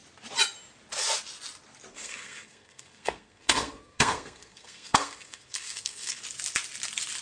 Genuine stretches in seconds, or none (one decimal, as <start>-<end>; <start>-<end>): 0.0-1.9; 6.2-7.2